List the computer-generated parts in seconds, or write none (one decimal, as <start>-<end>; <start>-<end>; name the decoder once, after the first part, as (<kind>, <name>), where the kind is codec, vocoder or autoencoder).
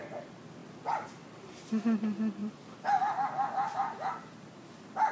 0.6-1.7 (vocoder, BigVGAN v2); 2.4-3.1; 3.8-5.1